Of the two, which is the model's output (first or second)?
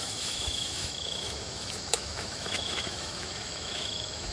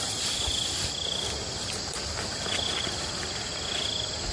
first